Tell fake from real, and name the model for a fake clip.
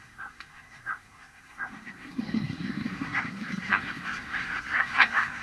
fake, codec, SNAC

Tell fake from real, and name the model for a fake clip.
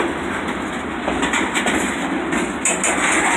real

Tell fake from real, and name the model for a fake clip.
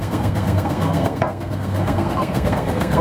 fake, codec, SNAC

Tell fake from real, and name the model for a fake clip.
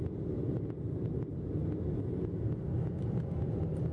real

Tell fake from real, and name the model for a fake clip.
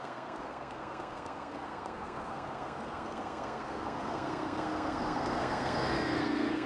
fake, codec, SNAC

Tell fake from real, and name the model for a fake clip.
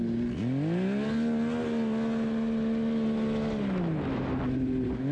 real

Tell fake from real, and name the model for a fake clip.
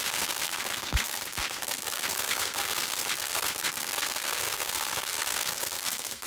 fake, codec, SNAC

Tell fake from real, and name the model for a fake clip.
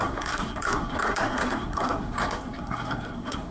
fake, codec, SNAC